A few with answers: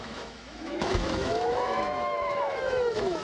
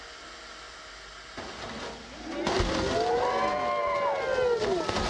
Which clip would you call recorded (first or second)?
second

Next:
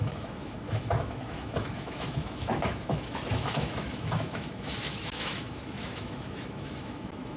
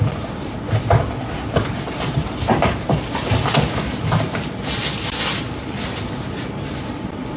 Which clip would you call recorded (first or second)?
second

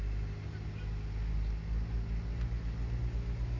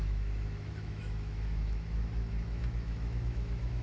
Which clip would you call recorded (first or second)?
first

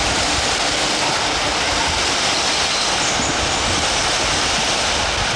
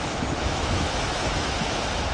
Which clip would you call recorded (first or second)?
first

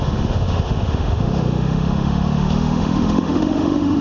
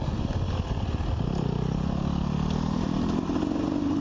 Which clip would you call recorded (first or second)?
second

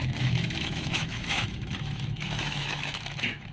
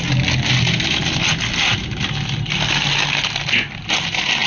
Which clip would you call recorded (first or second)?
second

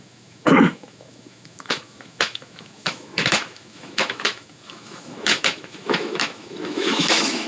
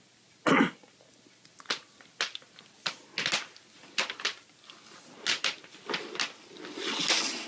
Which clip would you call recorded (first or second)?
second